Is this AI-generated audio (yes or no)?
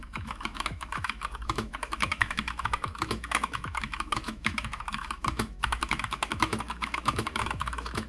yes